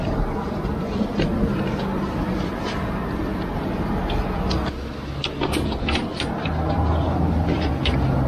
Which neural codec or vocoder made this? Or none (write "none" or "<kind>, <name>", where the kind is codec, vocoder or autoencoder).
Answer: none